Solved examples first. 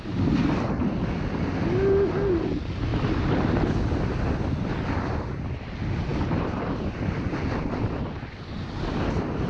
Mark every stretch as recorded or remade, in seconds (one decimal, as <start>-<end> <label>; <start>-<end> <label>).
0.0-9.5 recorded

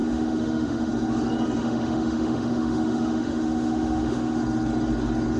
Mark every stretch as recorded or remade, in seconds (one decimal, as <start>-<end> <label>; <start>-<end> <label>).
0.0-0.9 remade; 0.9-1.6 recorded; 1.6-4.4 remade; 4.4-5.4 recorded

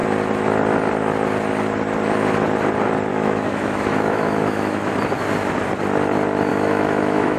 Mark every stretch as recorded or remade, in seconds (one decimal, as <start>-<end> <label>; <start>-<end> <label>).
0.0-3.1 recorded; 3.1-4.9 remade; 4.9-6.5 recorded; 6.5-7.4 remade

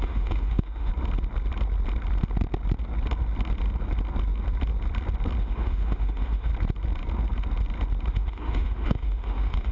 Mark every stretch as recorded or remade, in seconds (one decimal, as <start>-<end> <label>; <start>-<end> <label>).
0.0-0.9 remade; 0.9-5.4 recorded; 5.4-6.5 remade; 6.5-8.1 recorded; 8.1-9.7 remade